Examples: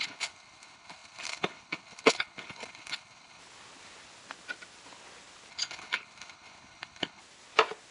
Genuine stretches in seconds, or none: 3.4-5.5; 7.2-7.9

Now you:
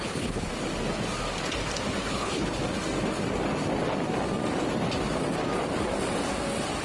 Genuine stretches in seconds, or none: 0.5-2.1; 2.6-6.8

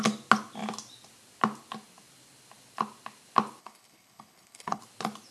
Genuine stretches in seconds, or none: 0.0-3.6; 4.8-5.3

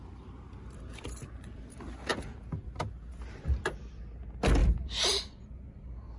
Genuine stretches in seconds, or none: 0.0-6.2

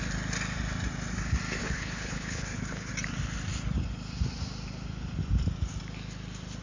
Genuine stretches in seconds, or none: 0.0-1.6; 2.9-6.6

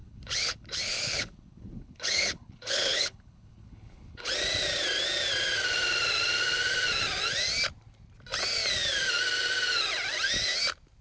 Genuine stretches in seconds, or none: 4.3-11.0